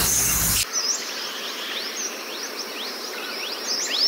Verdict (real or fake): real